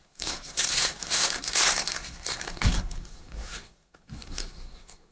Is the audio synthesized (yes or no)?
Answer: yes